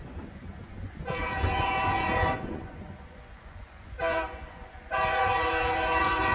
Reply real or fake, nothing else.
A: fake